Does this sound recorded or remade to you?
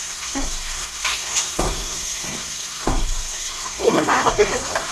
remade